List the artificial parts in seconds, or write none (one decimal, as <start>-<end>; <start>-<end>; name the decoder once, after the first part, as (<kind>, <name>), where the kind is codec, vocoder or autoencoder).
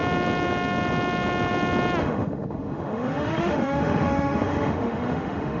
2.0-5.6 (autoencoder, DAC-VAE)